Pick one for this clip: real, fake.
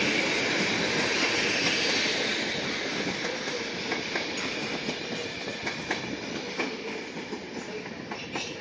real